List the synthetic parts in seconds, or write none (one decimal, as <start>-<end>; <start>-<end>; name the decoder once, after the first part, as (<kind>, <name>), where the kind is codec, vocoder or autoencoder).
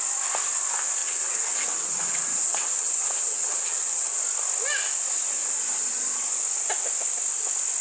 1.0-4.2 (vocoder, WaveNeXt)